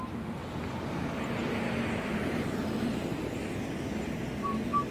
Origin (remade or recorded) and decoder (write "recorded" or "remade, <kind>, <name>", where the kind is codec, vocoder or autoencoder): recorded